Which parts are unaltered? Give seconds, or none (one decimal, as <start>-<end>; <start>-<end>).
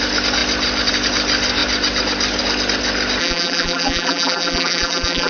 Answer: 0.0-3.2